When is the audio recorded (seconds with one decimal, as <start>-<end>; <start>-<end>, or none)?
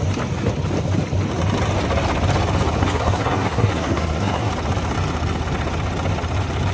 0.0-2.8; 4.5-6.7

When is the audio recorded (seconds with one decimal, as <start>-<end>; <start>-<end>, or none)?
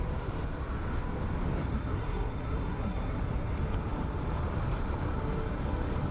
0.0-1.7; 3.2-6.1